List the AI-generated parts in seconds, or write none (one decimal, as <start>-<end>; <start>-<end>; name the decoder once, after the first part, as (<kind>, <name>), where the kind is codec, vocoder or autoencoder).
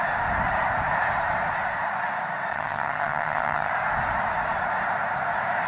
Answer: 2.5-3.7 (vocoder, HiFi-GAN)